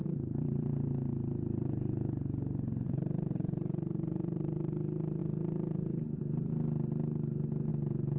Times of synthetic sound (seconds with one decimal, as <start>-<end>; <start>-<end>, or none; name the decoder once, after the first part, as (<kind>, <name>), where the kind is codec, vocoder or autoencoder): 0.0-4.7 (vocoder, BigVGAN v2)